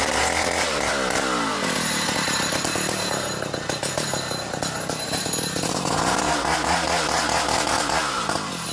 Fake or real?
real